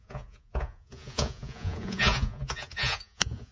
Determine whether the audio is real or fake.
fake